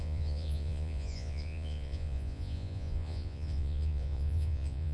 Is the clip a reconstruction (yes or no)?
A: yes